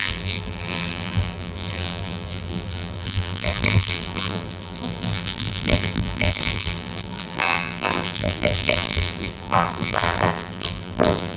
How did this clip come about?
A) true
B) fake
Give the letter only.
B